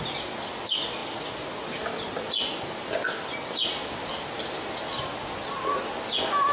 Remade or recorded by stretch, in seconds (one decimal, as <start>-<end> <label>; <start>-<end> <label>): 0.0-6.5 recorded